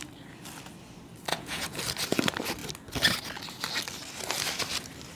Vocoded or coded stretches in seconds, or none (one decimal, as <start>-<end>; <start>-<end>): 1.3-1.8